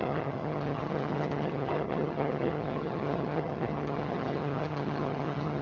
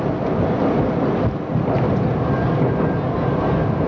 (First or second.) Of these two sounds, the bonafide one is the second